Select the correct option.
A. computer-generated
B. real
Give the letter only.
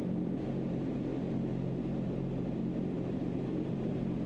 A